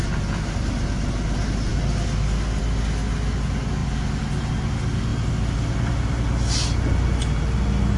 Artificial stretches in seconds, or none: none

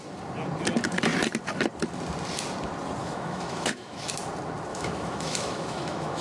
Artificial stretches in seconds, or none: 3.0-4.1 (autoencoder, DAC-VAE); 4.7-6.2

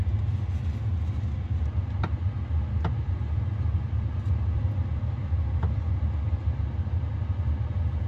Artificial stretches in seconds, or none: none

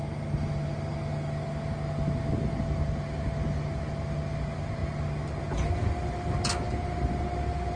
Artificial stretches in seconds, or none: none

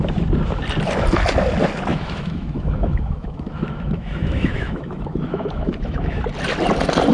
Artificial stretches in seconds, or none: 1.9-6.2 (autoencoder, DAC-VAE)

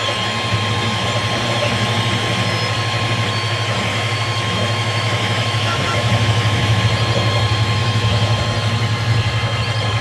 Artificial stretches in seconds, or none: 3.9-6.8 (autoencoder, DAC-VAE); 7.8-8.4